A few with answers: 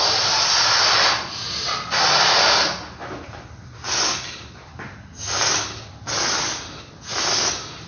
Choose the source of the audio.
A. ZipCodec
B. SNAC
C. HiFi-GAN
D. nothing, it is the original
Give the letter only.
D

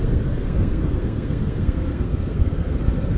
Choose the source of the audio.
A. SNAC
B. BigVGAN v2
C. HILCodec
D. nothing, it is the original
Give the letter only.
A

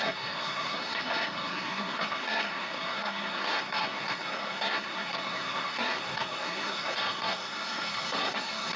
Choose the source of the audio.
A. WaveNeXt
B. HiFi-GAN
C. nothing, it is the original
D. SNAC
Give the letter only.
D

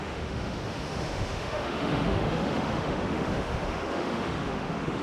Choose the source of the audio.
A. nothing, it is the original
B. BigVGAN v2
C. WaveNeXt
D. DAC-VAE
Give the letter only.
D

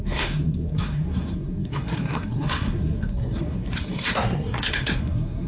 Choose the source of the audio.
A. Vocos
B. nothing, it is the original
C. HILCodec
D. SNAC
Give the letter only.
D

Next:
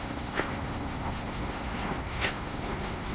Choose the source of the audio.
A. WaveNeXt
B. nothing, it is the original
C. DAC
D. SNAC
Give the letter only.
D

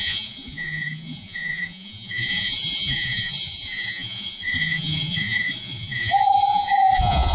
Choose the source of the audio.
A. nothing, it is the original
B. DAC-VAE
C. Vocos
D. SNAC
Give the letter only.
C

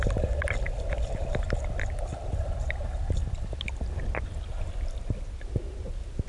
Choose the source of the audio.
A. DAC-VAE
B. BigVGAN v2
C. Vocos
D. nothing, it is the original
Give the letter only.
D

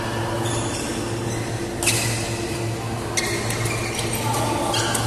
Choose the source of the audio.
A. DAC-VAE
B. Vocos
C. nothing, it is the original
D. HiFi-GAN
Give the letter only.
C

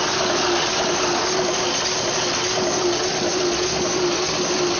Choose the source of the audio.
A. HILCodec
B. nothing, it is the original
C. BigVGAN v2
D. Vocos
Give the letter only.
B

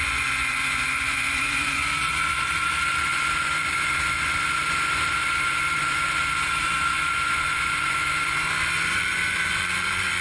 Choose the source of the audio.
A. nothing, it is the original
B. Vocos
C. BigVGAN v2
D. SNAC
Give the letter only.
B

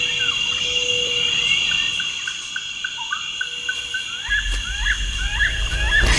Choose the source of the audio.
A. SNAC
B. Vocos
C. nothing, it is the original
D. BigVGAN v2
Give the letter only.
C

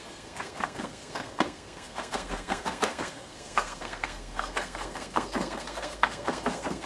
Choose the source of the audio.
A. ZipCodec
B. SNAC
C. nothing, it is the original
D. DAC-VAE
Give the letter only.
B